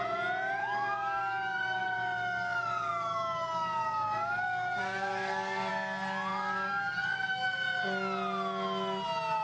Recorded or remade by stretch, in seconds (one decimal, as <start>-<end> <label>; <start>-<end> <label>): 0.0-0.6 recorded; 0.6-5.7 remade; 5.7-6.3 recorded; 6.3-7.8 remade; 7.8-9.4 recorded